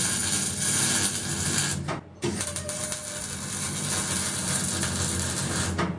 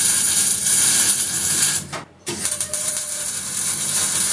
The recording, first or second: first